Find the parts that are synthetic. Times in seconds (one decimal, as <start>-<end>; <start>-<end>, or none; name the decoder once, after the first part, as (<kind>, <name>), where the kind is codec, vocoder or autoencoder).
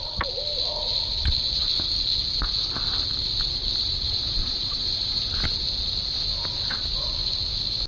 3.8-5.3 (vocoder, BigVGAN v2)